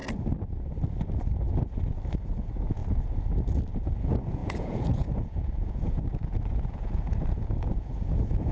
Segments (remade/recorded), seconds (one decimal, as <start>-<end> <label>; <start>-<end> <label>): 0.0-2.2 recorded; 2.2-2.8 remade; 2.8-3.7 recorded; 3.7-8.5 remade